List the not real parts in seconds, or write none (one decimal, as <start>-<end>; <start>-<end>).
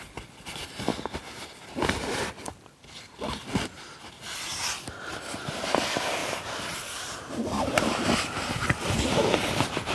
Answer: 6.2-9.4